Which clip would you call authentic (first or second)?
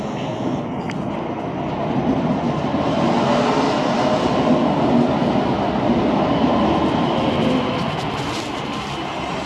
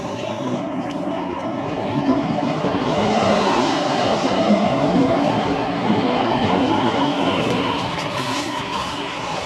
first